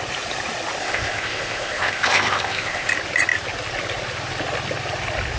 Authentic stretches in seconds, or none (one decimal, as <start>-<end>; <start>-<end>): 0.0-0.8; 2.9-5.4